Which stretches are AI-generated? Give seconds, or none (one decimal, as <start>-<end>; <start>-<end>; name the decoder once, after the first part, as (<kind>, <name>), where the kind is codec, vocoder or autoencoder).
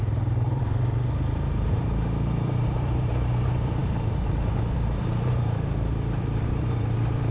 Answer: 0.0-7.3 (vocoder, BigVGAN v2)